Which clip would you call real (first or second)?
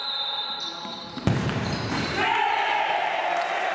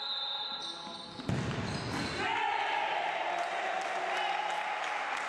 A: second